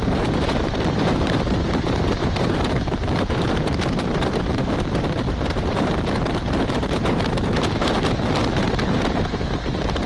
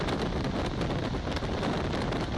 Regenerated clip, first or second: first